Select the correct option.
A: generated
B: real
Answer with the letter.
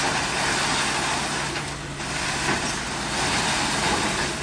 B